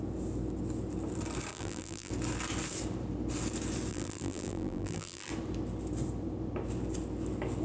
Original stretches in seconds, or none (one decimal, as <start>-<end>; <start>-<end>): 0.0-1.5; 2.1-3.9; 5.3-7.6